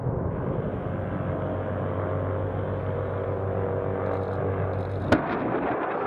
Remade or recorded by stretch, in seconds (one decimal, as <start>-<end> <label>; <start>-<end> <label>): 0.0-6.1 recorded